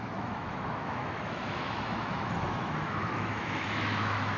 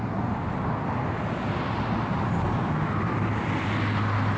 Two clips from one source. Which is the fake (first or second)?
first